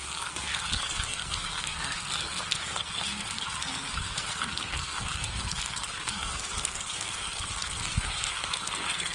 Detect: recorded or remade remade